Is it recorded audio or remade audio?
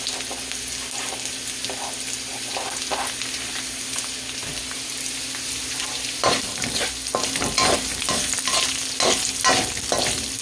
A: recorded